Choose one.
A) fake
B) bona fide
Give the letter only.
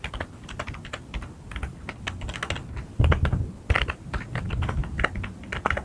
B